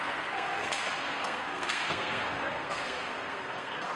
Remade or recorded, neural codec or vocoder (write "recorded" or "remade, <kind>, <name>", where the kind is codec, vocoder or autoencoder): remade, codec, SNAC